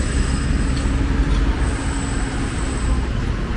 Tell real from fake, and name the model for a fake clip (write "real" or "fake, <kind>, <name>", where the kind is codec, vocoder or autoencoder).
real